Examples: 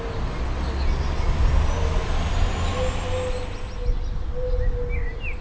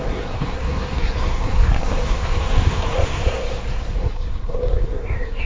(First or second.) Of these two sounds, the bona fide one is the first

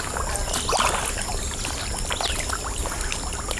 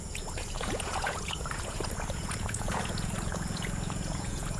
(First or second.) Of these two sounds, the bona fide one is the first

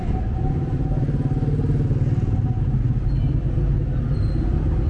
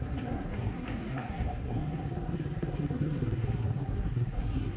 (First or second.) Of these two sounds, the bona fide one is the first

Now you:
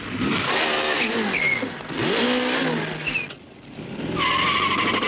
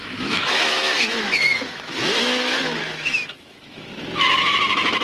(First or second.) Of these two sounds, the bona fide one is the first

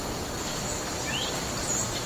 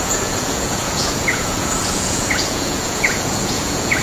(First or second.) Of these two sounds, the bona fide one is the first